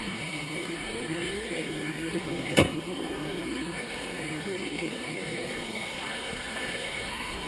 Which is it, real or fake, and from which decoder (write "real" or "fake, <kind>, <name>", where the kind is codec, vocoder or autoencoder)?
fake, codec, SNAC